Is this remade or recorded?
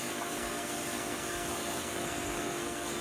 remade